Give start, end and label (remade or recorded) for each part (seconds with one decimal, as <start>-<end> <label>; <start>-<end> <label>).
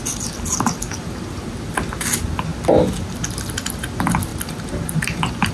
0.0-5.5 recorded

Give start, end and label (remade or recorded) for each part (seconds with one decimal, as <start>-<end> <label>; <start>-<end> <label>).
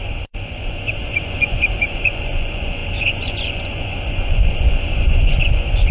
0.0-5.9 remade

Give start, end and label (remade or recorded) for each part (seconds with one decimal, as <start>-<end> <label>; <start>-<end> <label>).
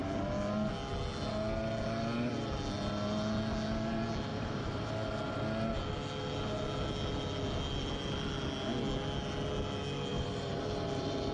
0.0-4.3 recorded; 4.3-4.9 remade; 4.9-10.1 recorded; 10.1-11.3 remade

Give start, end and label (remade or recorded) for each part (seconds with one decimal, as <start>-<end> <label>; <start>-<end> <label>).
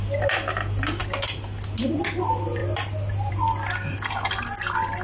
0.0-5.0 recorded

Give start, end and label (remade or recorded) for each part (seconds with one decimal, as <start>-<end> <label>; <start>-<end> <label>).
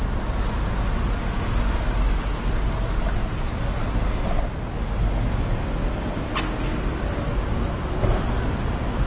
0.0-9.1 recorded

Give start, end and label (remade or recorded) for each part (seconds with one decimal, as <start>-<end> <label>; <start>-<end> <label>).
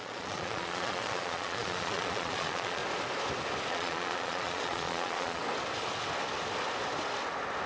0.0-2.8 remade; 2.8-3.7 recorded; 3.7-5.4 remade; 5.4-7.7 recorded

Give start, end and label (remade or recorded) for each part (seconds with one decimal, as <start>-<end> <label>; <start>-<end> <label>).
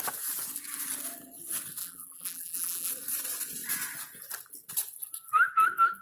0.0-1.8 recorded; 1.8-2.9 remade; 2.9-6.0 recorded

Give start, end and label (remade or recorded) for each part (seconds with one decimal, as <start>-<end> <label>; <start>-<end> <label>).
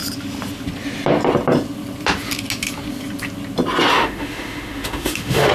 0.0-3.9 recorded; 3.9-5.5 remade